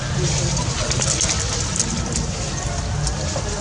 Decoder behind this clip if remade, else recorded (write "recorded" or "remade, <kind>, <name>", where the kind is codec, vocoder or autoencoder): recorded